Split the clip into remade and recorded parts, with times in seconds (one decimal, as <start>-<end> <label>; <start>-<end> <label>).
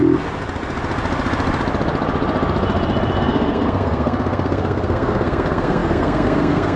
0.0-3.2 recorded; 3.2-6.8 remade